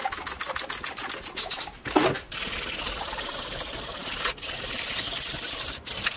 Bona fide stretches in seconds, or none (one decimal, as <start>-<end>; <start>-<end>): 0.0-6.2